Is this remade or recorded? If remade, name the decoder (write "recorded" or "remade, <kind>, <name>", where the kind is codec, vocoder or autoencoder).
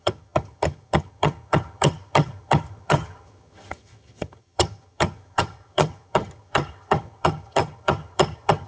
remade, vocoder, HiFi-GAN